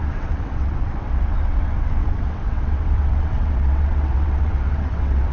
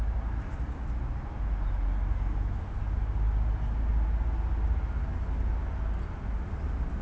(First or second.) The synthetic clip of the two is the first